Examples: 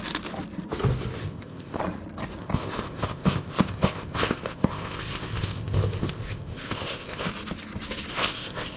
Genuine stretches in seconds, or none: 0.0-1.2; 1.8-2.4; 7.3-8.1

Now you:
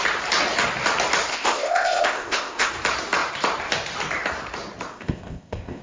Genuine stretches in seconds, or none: 0.0-1.3; 2.7-4.9

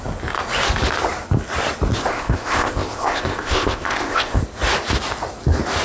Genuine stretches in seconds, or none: 0.0-2.1; 4.4-5.8